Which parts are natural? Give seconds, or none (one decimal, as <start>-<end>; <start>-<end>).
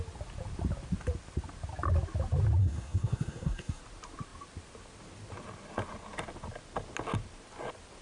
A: 0.0-2.6; 3.8-8.0